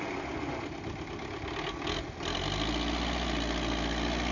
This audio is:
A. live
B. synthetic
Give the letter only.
A